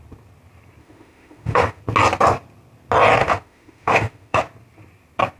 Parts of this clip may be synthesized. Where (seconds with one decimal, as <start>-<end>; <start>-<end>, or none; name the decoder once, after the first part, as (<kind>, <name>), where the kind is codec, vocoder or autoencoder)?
0.8-1.8 (autoencoder, DAC-VAE); 3.2-4.4